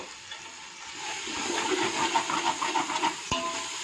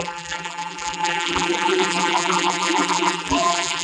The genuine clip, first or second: first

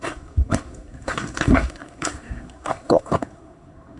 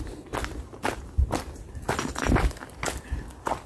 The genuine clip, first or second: second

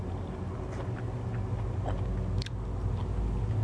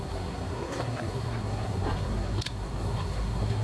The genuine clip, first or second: first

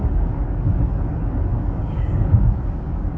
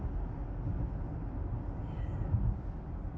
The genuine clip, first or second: second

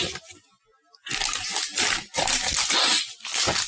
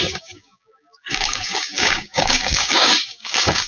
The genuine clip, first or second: first